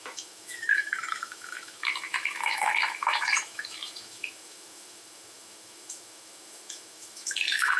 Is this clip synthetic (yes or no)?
yes